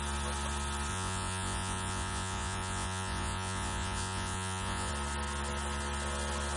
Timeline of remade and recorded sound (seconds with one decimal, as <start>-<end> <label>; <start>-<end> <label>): 0.0-0.9 recorded; 0.9-4.9 remade; 4.9-6.6 recorded

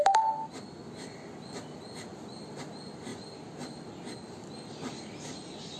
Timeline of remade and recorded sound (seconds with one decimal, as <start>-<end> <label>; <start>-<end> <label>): 0.0-0.8 remade; 0.8-1.7 recorded; 1.7-5.8 remade

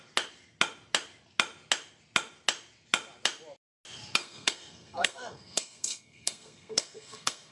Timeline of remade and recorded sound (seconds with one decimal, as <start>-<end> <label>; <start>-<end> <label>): 0.0-4.2 recorded; 4.2-7.5 remade

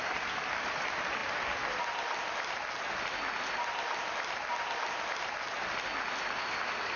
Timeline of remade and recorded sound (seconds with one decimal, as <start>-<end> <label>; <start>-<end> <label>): 0.0-7.0 recorded

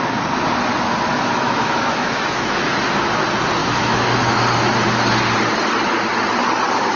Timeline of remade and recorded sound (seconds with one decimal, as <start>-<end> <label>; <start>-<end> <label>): 0.0-1.1 recorded; 1.1-2.6 remade; 2.6-3.6 recorded; 3.6-4.7 remade; 4.7-7.0 recorded

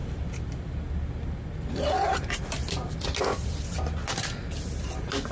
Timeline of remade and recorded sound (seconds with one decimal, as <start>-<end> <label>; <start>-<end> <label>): 0.0-5.3 recorded

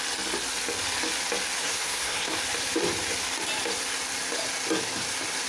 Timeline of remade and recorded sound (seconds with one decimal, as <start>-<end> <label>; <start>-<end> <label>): 0.0-1.6 recorded; 1.6-2.3 remade; 2.3-5.5 recorded

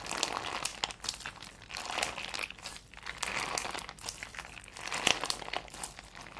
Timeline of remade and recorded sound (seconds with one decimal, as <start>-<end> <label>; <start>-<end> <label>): 0.0-6.4 recorded